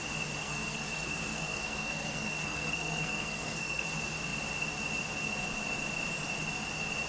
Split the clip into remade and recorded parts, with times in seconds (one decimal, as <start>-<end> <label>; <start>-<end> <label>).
0.0-0.4 recorded; 0.4-3.9 remade; 3.9-7.1 recorded